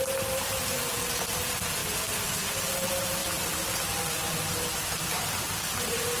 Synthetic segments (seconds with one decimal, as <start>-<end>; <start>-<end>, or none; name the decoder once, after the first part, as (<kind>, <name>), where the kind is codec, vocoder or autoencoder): 0.0-6.2 (vocoder, BigVGAN v2)